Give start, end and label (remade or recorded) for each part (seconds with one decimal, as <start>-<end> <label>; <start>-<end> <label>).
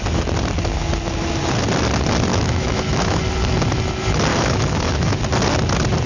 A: 0.0-2.3 recorded; 2.3-3.2 remade; 3.2-4.3 recorded; 4.3-5.2 remade; 5.2-6.1 recorded